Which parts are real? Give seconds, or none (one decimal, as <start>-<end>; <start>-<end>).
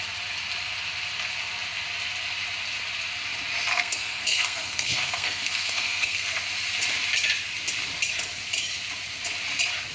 0.0-3.7; 6.4-9.9